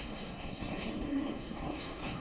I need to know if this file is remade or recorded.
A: remade